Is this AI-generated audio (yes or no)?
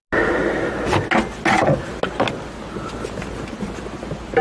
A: no